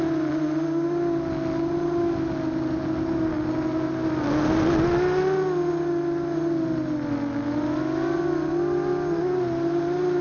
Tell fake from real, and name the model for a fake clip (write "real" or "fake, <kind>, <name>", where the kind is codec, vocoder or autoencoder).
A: real